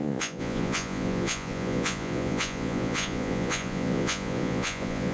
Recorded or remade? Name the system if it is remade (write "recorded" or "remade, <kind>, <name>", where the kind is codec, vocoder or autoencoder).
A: remade, vocoder, Vocos